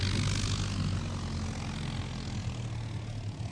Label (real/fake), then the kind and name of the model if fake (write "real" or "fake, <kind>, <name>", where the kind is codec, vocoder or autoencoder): real